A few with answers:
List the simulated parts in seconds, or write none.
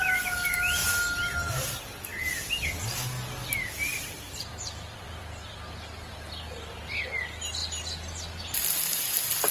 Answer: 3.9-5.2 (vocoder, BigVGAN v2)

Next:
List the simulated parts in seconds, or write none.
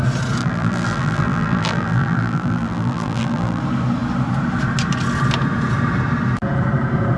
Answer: 0.4-3.6 (vocoder, BigVGAN v2)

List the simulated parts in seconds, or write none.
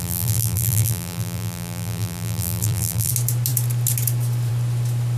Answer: 0.0-3.1 (vocoder, BigVGAN v2)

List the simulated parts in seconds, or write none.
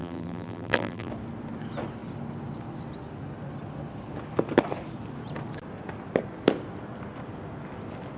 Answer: 0.0-1.1 (vocoder, BigVGAN v2)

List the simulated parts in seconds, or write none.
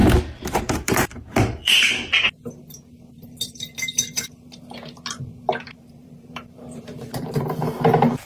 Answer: 0.6-2.1 (vocoder, BigVGAN v2); 3.1-8.3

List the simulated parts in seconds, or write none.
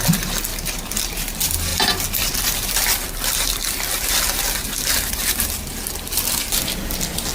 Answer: 0.5-1.1 (vocoder, BigVGAN v2); 1.7-5.1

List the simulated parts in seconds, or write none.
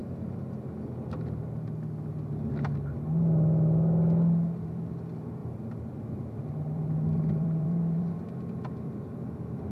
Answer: 5.4-9.7 (vocoder, BigVGAN v2)